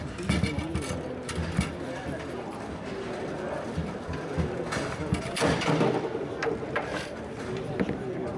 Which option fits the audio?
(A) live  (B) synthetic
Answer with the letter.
A